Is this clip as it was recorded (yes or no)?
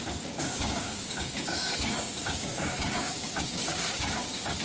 no